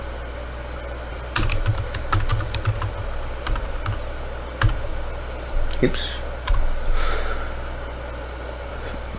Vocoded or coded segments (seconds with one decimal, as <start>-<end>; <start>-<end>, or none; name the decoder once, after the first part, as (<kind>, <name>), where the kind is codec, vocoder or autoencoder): 1.1-1.7 (vocoder, BigVGAN v2); 2.3-3.7